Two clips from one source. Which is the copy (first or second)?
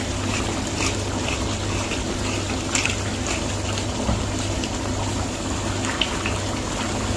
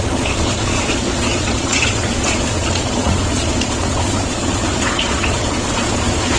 second